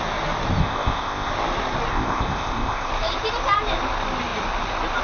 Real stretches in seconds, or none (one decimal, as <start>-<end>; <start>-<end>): 0.0-0.6; 1.3-1.9; 2.9-5.0